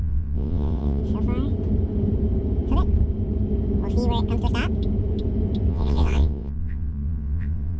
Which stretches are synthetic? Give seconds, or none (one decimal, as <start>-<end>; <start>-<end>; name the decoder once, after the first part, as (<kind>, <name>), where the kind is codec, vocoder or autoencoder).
0.0-1.0 (vocoder, WaveNeXt); 5.7-7.8